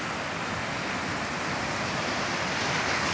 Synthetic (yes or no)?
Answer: no